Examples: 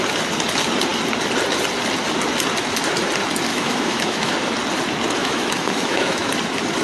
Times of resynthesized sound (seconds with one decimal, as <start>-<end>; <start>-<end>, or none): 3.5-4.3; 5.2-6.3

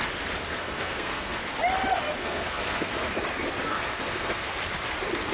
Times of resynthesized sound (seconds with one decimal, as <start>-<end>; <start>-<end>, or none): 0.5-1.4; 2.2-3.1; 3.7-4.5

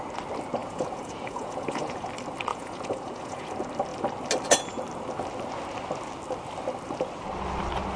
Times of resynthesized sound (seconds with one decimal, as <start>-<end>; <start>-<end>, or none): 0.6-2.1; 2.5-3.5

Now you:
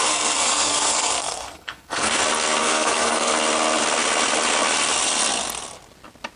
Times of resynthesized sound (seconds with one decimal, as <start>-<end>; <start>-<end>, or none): 0.0-2.2; 2.6-3.3

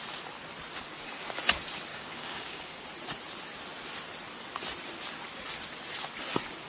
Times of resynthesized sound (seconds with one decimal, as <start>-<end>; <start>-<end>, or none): 1.9-2.8